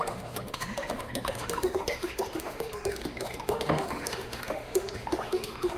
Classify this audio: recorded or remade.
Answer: remade